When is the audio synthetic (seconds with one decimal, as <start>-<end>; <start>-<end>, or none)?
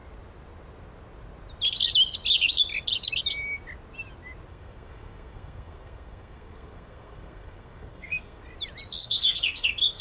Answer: 4.5-8.4; 9.0-10.0